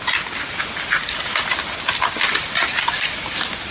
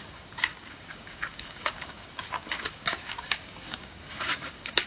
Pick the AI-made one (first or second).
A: second